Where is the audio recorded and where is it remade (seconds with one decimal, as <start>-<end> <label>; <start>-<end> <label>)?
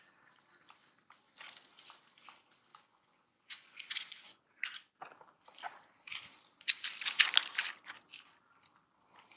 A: 0.0-2.7 recorded; 2.7-4.4 remade; 4.4-9.4 recorded